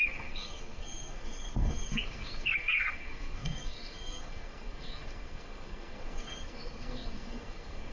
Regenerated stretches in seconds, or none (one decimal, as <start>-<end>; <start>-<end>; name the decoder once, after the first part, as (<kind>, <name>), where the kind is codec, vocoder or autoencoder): 0.0-7.9 (codec, SNAC)